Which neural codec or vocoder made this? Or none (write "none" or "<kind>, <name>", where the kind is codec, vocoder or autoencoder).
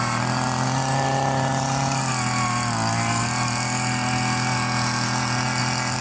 none